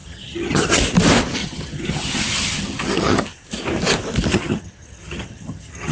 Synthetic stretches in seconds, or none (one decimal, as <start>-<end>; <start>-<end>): 0.0-0.8; 1.4-3.2; 4.3-5.9